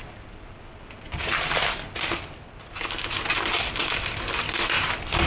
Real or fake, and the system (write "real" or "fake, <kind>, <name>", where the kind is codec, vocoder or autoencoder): real